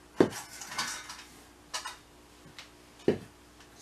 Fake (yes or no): no